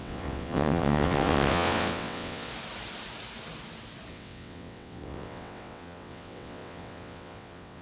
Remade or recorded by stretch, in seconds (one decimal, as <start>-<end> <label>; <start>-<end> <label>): 0.0-2.5 remade; 2.5-4.1 recorded; 4.1-7.8 remade